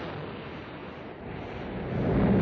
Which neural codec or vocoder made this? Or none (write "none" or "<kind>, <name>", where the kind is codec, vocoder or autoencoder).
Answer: none